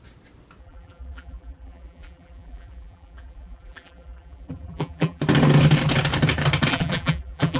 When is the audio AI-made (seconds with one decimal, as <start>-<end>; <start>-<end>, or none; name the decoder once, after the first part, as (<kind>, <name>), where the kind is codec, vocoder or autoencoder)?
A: 0.6-5.2 (vocoder, BigVGAN v2); 6.7-7.6